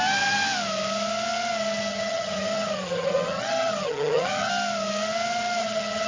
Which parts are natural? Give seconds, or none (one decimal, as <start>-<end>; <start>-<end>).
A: 0.0-1.9; 4.5-5.6